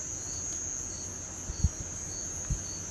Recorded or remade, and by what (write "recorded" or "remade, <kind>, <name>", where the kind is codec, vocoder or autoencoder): recorded